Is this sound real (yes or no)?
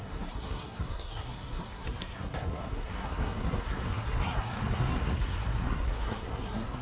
no